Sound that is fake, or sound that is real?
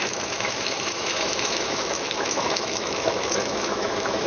fake